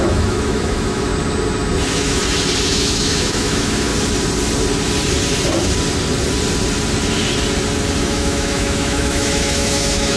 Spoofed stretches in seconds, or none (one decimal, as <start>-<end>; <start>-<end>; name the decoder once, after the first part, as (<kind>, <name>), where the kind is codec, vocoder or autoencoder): 0.0-1.1 (autoencoder, DAC-VAE); 1.8-2.2; 2.7-3.9; 8.0-10.2